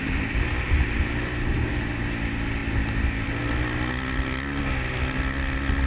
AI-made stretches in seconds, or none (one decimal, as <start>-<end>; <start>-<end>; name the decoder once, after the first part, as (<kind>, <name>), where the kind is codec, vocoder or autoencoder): 0.0-1.2 (vocoder, BigVGAN v2)